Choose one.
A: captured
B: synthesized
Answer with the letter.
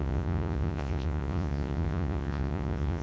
B